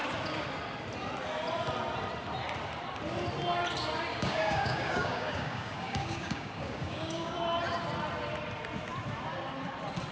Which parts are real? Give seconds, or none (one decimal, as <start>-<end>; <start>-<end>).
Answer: 0.0-4.1; 7.3-10.1

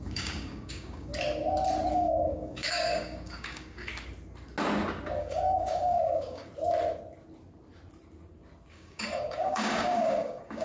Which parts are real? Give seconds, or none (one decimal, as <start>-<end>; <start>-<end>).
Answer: 1.1-1.9; 3.9-5.2; 6.5-8.7